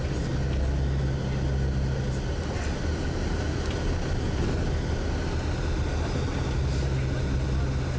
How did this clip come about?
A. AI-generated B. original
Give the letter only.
B